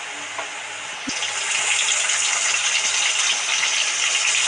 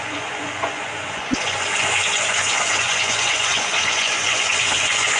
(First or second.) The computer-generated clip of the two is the second